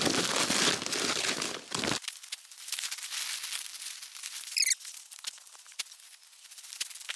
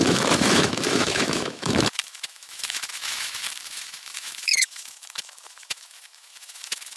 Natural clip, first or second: first